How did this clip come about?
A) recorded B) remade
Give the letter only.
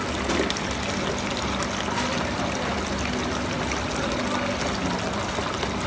A